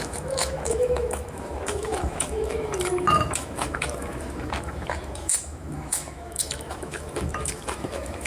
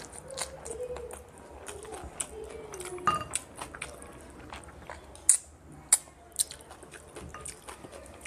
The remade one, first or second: first